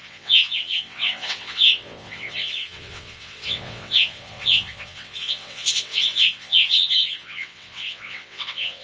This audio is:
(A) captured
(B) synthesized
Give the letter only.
B